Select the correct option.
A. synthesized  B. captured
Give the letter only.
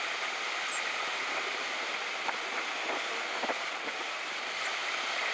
A